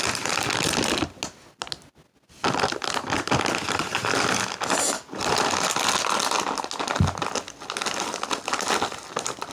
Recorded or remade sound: recorded